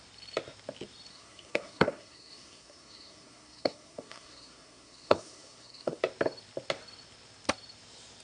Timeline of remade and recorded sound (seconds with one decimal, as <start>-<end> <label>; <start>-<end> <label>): 0.0-1.1 recorded; 1.1-6.0 remade; 6.0-8.2 recorded